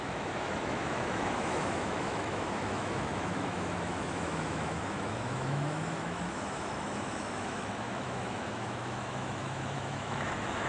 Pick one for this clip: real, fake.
fake